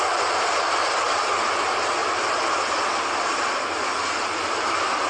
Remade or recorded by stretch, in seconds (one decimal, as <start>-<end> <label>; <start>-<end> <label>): 0.0-2.0 remade; 2.0-3.7 recorded; 3.7-5.1 remade